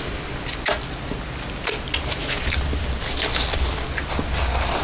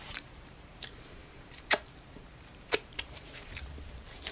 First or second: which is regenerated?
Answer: second